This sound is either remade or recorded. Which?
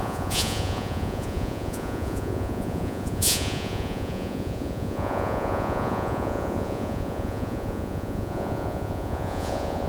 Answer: remade